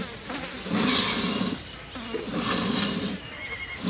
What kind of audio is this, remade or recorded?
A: recorded